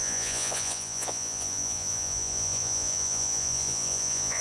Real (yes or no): no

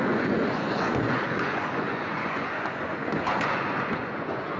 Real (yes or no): no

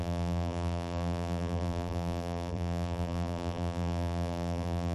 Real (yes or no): no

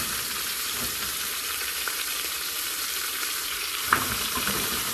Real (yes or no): no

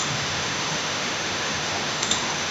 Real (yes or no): no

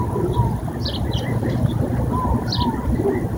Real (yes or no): no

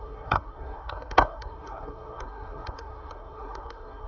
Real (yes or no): no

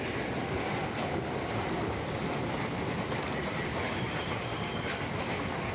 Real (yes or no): yes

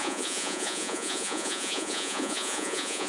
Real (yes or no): no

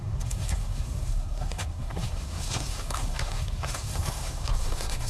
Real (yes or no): no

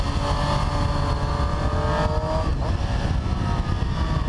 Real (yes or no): yes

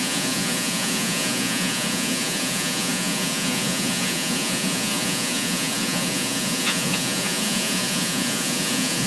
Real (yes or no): no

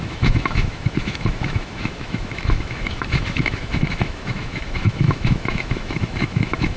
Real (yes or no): no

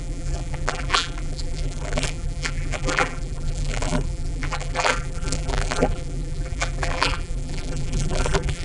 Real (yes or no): no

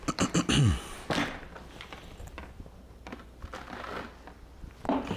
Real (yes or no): yes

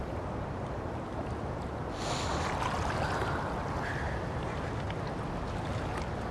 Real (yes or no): yes